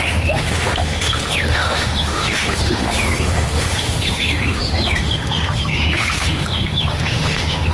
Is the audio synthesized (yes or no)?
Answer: yes